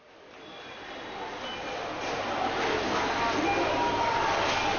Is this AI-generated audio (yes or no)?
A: no